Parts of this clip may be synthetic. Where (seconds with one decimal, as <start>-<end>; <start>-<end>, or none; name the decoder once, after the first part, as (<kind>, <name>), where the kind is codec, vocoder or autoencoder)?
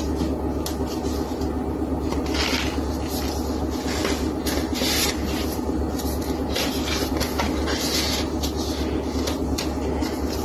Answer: none